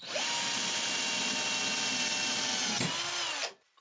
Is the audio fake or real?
real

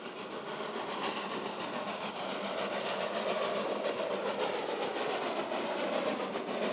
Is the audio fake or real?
real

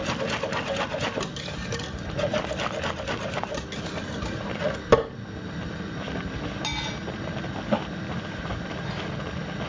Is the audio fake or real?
real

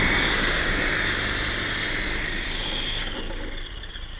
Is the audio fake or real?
real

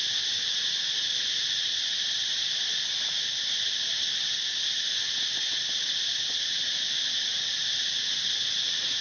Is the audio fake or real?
real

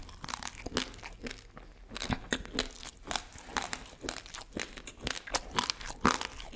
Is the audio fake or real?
real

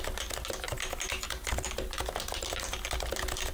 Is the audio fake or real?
real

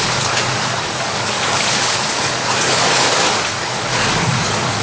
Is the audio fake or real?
fake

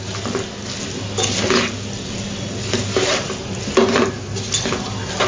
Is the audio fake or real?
real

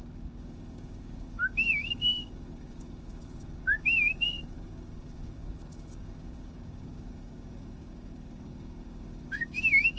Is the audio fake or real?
fake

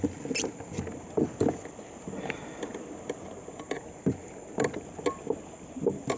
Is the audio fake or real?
real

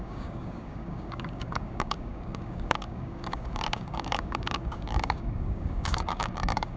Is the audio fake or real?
fake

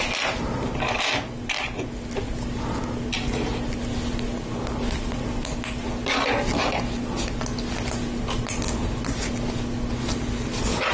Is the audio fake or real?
real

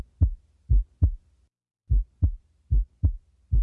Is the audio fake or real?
real